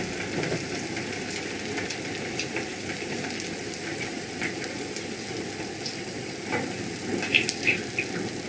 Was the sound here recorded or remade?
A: recorded